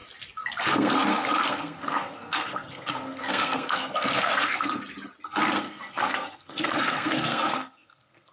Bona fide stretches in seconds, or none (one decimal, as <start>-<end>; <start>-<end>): 0.0-0.6; 4.7-5.4